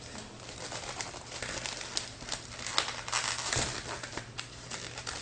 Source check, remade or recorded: recorded